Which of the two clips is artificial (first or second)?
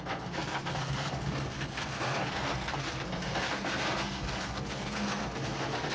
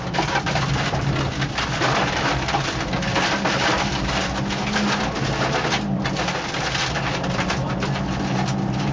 first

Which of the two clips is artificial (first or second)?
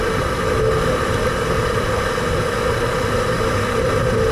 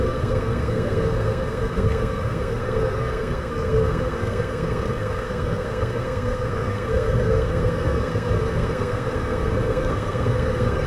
second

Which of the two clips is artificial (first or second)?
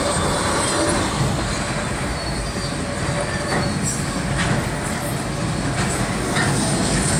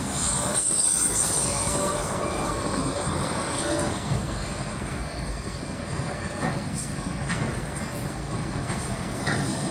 second